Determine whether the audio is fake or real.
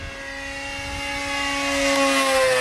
real